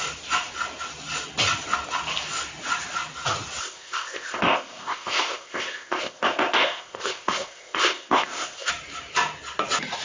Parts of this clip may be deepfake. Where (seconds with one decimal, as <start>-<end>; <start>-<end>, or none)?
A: 3.6-8.7